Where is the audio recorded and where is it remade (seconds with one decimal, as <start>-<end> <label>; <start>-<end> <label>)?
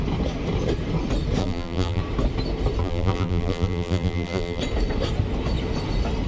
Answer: 0.0-1.4 recorded; 1.4-2.0 remade; 2.0-2.8 recorded; 2.8-4.6 remade; 4.6-6.3 recorded